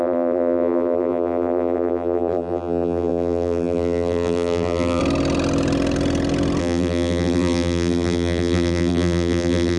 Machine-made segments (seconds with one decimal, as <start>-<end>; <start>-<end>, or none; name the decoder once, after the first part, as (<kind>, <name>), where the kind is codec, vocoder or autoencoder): 0.0-5.0 (vocoder, BigVGAN v2); 6.6-9.8